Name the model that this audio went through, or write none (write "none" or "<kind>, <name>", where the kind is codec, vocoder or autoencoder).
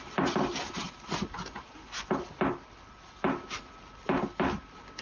none